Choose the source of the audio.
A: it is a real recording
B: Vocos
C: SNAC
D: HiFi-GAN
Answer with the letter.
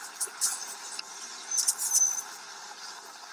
A